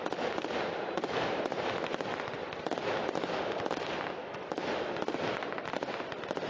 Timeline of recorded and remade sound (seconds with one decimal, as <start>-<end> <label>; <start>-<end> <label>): 0.0-4.2 recorded; 4.2-4.9 remade; 4.9-6.5 recorded